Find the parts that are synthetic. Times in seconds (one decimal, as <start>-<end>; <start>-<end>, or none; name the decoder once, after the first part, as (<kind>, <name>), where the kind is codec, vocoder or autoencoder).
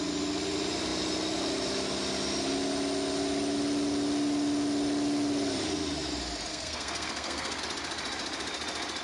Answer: 6.5-7.6 (codec, SNAC)